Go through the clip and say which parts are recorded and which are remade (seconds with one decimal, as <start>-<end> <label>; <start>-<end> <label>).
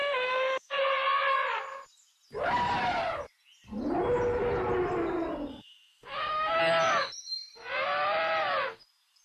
0.0-0.8 remade; 0.8-5.5 recorded; 5.5-6.6 remade; 6.6-9.2 recorded